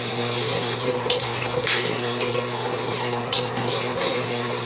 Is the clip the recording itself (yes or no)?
no